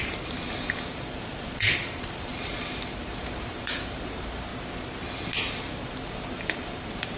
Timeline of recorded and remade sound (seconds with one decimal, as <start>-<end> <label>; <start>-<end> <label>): 0.0-4.5 remade; 4.5-5.5 recorded; 5.5-7.2 remade